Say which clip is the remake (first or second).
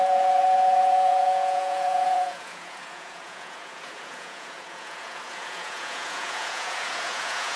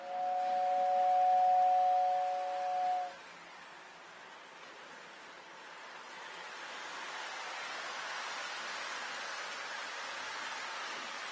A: first